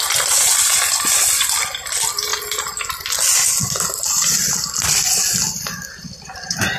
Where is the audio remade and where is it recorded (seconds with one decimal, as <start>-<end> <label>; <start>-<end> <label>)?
0.0-6.8 recorded